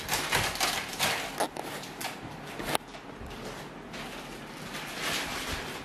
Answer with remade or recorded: recorded